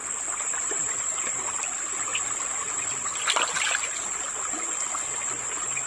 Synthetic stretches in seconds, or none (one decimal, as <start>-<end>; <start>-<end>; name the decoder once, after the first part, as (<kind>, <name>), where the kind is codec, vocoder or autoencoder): none